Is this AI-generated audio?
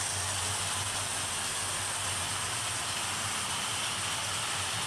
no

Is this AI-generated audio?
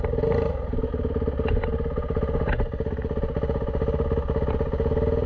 no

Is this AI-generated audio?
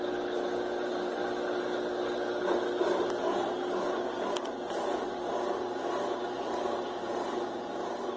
no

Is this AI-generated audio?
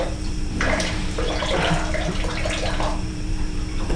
yes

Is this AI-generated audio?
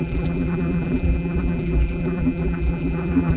yes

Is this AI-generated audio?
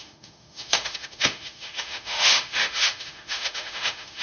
yes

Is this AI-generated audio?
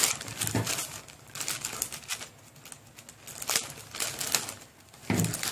no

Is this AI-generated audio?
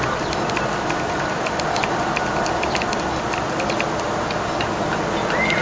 no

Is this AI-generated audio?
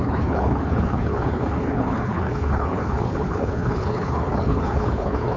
yes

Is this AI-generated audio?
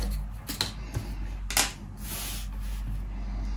no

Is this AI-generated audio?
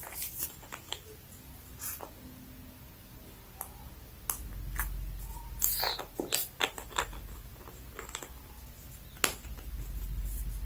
no